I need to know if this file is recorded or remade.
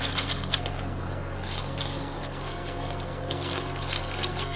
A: remade